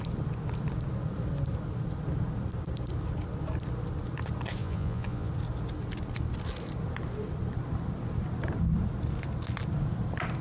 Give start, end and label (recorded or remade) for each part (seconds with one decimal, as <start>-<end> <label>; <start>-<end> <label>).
0.0-4.6 recorded; 4.6-5.3 remade; 5.3-10.4 recorded